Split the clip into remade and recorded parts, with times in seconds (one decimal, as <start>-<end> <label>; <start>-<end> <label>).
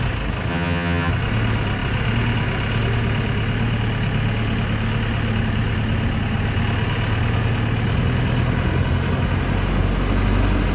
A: 0.0-0.5 recorded; 0.5-1.1 remade; 1.1-10.7 recorded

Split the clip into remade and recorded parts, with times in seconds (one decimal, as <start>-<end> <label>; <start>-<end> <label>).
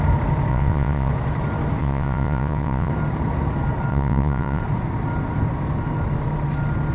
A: 0.0-0.5 recorded; 0.5-1.1 remade; 1.1-1.8 recorded; 1.8-2.9 remade; 2.9-3.9 recorded; 3.9-4.6 remade; 4.6-6.9 recorded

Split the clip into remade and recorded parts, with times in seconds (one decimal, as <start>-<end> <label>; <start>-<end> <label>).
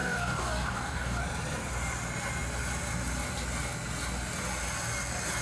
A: 0.0-1.2 remade; 1.2-5.4 recorded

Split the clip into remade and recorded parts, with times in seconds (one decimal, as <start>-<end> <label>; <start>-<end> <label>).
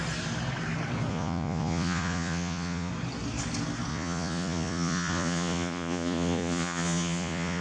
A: 0.0-1.1 recorded; 1.1-2.9 remade; 2.9-3.9 recorded; 3.9-7.6 remade